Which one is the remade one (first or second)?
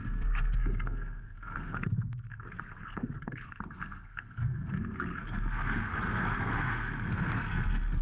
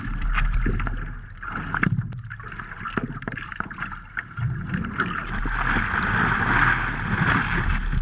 first